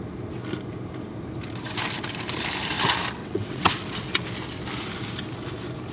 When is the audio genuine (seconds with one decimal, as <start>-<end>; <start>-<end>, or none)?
0.0-3.2; 3.7-5.9